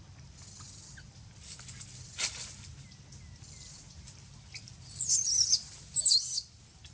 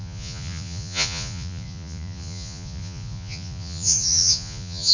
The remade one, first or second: second